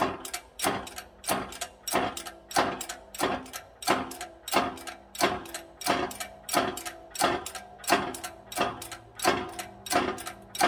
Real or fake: real